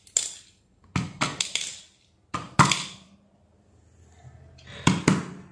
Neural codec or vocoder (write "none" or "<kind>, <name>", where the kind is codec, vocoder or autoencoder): none